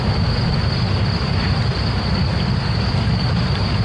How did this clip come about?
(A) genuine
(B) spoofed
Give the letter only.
A